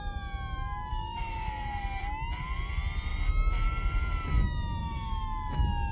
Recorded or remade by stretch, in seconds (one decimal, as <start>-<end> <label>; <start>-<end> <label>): 0.0-0.9 recorded; 0.9-1.5 remade; 1.5-4.8 recorded; 4.8-5.5 remade; 5.5-5.9 recorded